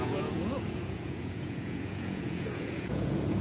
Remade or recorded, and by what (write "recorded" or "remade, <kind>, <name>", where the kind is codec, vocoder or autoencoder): remade, vocoder, Vocos